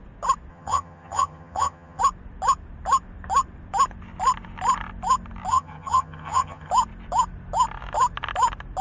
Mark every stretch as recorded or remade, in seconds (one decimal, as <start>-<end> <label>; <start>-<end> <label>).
0.0-0.5 recorded; 0.5-2.0 remade; 2.0-5.5 recorded; 5.5-6.7 remade; 6.7-8.8 recorded